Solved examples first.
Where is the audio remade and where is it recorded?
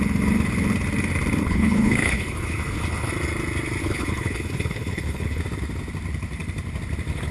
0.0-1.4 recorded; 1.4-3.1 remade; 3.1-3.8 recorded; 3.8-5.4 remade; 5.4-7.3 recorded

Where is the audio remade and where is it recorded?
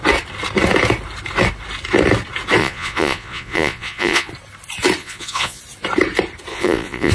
0.0-2.6 recorded; 2.6-4.3 remade; 4.3-5.0 recorded; 5.0-5.6 remade; 5.6-6.5 recorded; 6.5-7.1 remade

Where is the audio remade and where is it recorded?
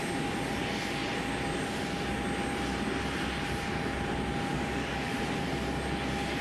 0.0-4.5 recorded; 4.5-5.1 remade; 5.1-6.4 recorded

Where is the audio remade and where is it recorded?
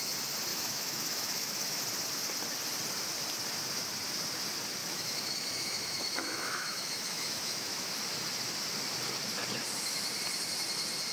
0.0-0.5 recorded; 0.5-1.8 remade; 1.8-4.8 recorded; 4.8-7.9 remade; 7.9-11.1 recorded